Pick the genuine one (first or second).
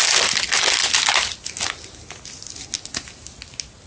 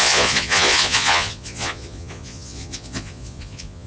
first